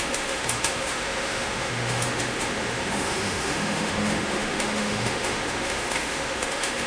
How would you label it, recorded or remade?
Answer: remade